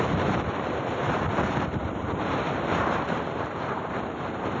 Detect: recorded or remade remade